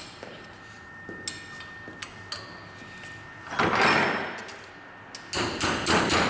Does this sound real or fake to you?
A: real